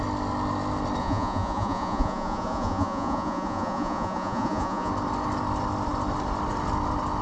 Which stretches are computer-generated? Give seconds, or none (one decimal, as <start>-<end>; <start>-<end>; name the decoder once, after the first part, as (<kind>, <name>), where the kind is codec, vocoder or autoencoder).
1.0-4.9 (vocoder, Vocos)